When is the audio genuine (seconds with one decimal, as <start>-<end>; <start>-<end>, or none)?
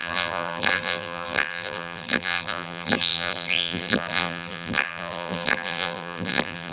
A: none